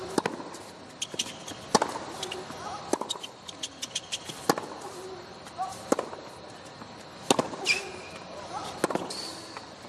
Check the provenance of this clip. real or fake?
real